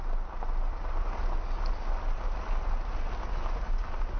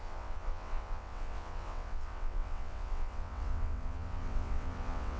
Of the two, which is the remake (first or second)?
second